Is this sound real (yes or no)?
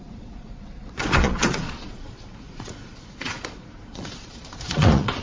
no